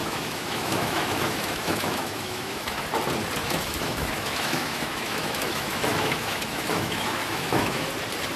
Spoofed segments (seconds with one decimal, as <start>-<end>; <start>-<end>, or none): 0.0-2.8; 3.4-7.9